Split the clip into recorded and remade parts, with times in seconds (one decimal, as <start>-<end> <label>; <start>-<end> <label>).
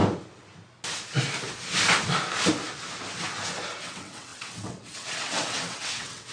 0.0-3.8 recorded; 3.8-6.3 remade